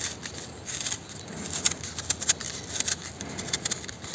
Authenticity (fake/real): real